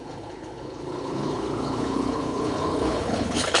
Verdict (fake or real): fake